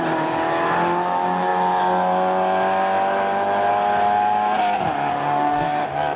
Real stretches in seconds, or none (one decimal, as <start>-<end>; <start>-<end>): 0.0-5.1; 5.8-6.2

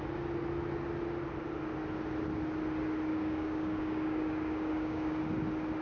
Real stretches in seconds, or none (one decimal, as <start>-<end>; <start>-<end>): 0.0-3.1; 5.2-5.8

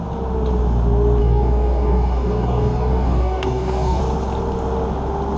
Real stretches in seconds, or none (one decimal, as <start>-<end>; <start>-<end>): 0.0-1.2; 4.0-5.4

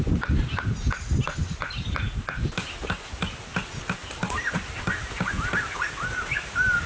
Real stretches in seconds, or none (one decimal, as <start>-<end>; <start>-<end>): 0.0-6.9

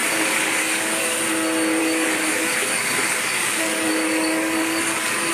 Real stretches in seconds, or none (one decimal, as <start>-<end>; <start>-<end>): 1.2-1.8